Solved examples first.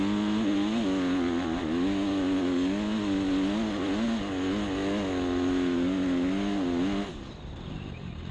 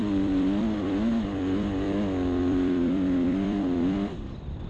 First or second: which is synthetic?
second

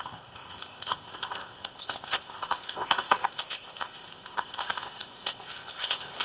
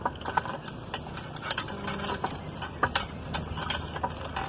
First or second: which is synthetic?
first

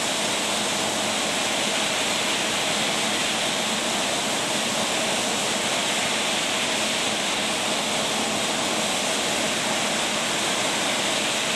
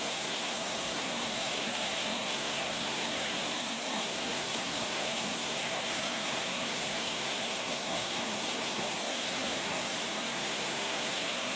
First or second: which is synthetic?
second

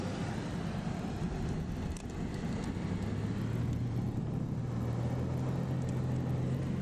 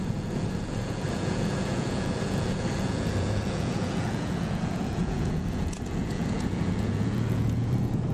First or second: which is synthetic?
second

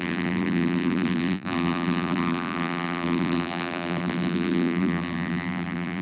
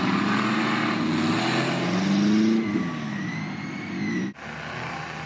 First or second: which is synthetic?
first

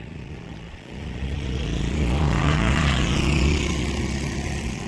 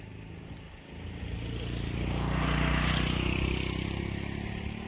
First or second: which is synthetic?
first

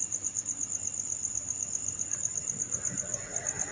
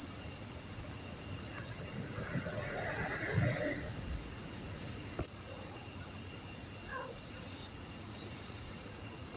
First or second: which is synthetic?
second